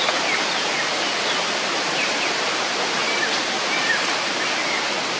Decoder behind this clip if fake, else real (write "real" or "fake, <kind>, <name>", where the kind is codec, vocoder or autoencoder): real